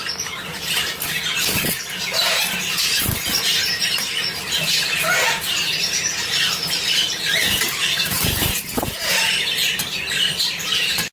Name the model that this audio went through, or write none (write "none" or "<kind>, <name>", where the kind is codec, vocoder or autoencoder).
vocoder, BigVGAN v2